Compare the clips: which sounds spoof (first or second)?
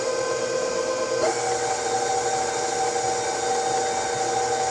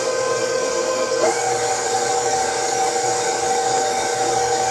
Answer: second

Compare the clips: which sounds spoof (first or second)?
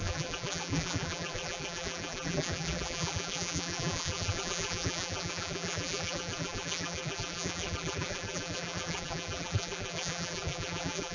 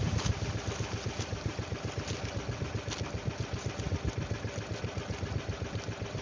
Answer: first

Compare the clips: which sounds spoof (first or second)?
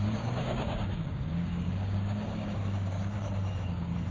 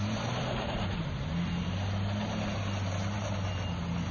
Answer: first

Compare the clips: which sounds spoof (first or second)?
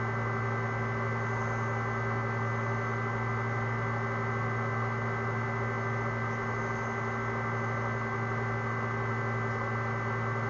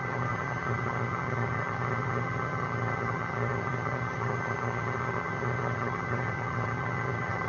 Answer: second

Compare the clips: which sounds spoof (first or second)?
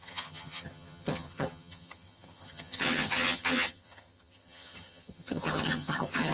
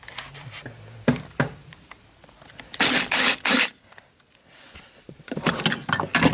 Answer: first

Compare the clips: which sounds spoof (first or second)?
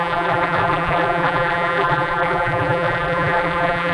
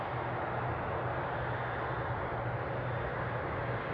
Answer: first